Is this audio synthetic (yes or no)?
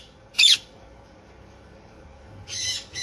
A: yes